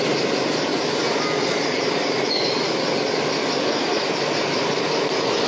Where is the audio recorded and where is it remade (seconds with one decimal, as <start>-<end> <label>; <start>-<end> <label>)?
0.0-5.5 recorded